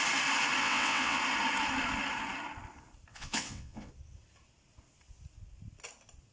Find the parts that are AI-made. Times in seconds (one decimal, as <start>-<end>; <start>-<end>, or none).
0.6-1.2; 3.1-3.9

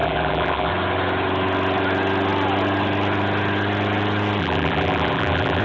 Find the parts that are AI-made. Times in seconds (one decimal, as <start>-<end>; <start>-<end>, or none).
0.0-0.7; 4.4-5.6

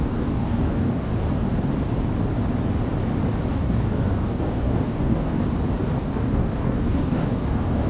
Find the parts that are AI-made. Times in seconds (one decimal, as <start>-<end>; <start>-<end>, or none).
0.0-1.1; 3.5-5.4; 6.0-7.9

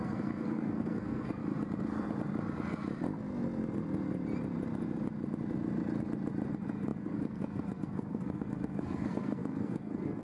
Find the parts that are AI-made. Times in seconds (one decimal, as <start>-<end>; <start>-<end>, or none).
0.0-1.4; 6.5-10.2

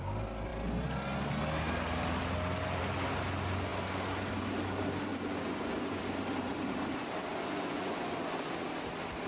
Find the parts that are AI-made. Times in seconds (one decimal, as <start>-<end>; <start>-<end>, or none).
5.1-6.0; 7.3-8.5